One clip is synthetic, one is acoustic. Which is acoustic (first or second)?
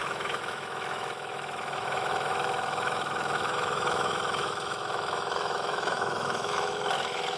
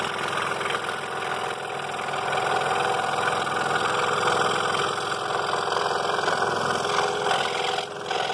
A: second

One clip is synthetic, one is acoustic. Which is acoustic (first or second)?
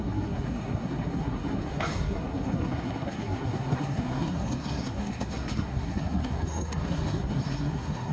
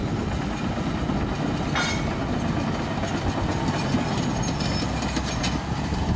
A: second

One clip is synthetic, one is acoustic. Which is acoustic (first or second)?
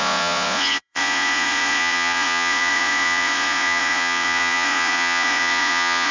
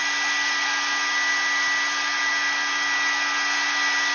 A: second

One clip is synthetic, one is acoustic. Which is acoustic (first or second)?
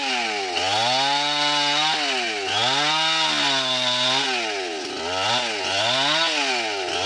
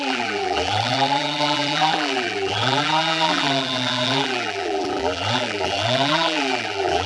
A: first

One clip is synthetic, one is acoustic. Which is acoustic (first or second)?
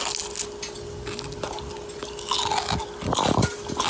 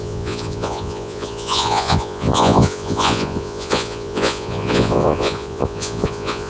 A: first